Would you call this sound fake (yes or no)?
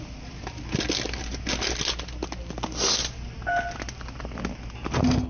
no